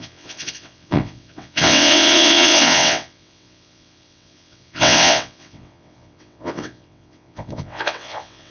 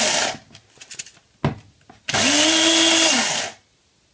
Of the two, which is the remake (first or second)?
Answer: first